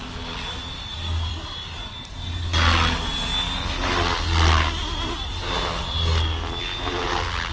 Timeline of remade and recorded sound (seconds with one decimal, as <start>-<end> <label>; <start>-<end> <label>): 0.0-7.5 recorded